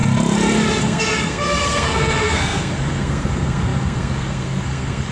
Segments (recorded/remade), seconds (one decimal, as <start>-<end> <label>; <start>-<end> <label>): 0.0-0.8 recorded; 0.8-5.1 remade